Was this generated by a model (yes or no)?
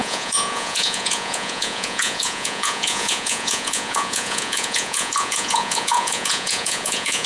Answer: yes